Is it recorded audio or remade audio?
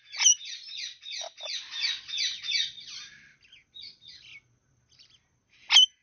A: remade